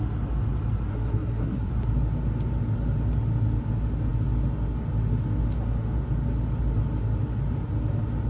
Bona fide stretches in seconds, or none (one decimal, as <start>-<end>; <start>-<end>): 0.0-0.9; 1.7-8.3